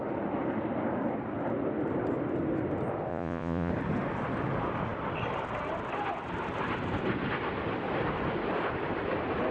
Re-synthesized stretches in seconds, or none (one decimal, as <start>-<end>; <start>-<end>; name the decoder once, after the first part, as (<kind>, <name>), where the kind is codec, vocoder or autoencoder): 3.1-3.7 (vocoder, Vocos)